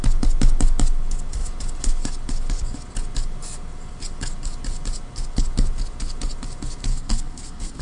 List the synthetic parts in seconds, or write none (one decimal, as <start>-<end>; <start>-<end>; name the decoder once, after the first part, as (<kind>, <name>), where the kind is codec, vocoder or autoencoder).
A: 6.9-7.8 (codec, SNAC)